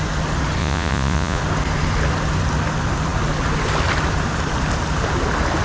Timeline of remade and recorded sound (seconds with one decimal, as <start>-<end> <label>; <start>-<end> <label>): 0.0-0.6 recorded; 0.6-1.4 remade; 1.4-5.6 recorded

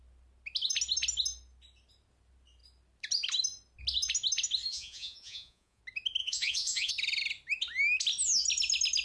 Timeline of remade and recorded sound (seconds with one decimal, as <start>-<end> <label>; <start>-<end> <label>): 0.0-4.7 recorded; 4.7-5.8 remade; 5.8-6.2 recorded; 6.2-6.9 remade; 6.9-9.0 recorded

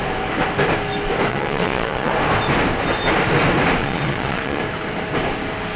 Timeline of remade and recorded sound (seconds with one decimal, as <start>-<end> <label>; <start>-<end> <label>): 0.0-1.3 recorded; 1.3-2.1 remade; 2.1-3.8 recorded; 3.8-4.6 remade; 4.6-5.8 recorded

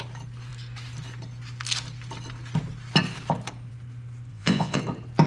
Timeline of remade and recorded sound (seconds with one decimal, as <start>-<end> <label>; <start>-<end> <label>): 0.0-4.3 recorded; 4.3-4.8 remade; 4.8-5.3 recorded

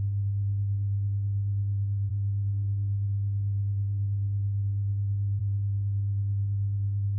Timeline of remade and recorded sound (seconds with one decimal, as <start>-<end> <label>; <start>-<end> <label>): 0.0-7.2 recorded

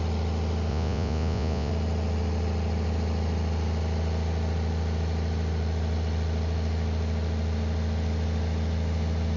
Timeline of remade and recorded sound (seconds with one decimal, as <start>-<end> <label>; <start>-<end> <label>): 0.0-0.7 recorded; 0.7-1.7 remade; 1.7-9.4 recorded